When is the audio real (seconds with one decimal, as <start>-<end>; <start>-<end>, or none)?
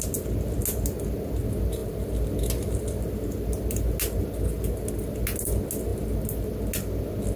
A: 0.0-7.4